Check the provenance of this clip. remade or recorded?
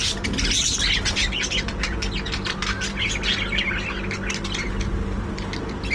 recorded